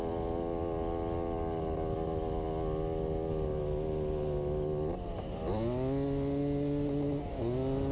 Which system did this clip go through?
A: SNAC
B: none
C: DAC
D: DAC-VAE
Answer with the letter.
B